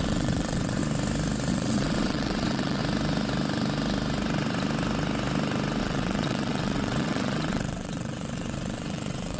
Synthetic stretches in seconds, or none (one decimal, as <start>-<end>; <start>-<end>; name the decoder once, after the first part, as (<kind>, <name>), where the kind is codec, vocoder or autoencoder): 0.0-0.8 (vocoder, WaveNeXt); 1.5-2.8; 5.8-9.4